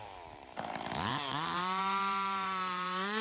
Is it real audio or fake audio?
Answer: fake